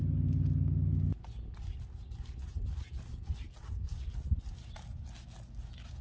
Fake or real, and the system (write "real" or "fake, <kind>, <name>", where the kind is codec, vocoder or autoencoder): real